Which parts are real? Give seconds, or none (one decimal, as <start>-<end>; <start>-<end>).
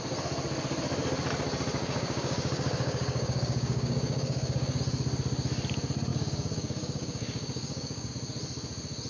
0.0-1.8; 4.8-6.1; 8.1-9.1